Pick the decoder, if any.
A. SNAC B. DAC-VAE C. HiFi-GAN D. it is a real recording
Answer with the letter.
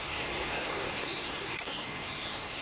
A